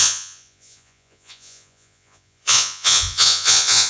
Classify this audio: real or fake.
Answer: fake